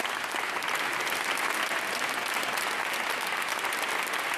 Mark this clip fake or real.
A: real